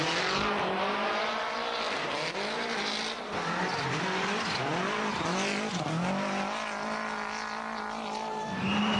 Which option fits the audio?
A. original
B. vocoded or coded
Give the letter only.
A